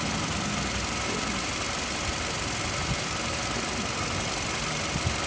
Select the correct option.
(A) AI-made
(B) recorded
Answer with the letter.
B